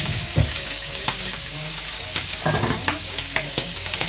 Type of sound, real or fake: fake